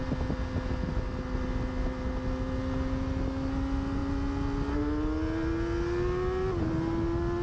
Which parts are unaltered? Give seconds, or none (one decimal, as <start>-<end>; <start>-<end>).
0.0-7.4